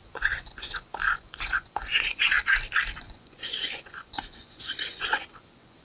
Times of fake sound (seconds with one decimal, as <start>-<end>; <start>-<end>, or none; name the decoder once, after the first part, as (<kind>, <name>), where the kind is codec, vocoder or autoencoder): 0.0-2.4 (vocoder, Vocos); 3.0-5.8